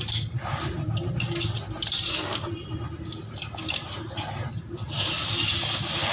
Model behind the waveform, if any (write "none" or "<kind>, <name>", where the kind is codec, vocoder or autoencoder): none